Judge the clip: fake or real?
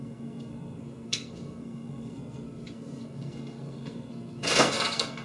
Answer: fake